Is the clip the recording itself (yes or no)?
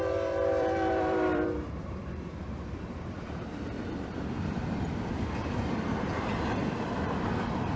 no